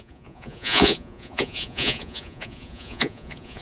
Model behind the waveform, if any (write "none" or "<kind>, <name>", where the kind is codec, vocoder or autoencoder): vocoder, Vocos